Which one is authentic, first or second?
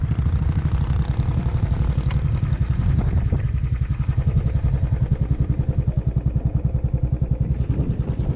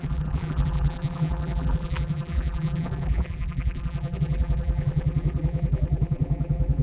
first